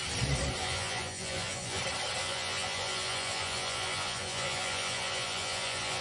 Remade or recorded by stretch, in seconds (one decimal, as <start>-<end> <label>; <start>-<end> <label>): 0.0-0.6 recorded; 0.6-1.8 remade; 1.8-2.2 recorded; 2.2-6.0 remade